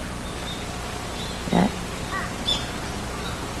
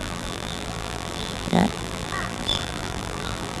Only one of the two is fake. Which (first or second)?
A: second